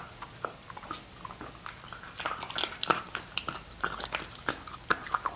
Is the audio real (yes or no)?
yes